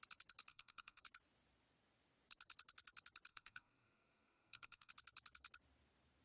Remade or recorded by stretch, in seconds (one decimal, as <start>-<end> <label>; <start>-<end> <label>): 0.0-0.5 recorded; 0.5-1.0 remade; 1.0-3.3 recorded; 3.3-4.9 remade; 4.9-6.2 recorded